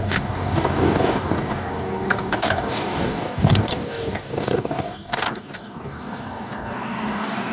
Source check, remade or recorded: remade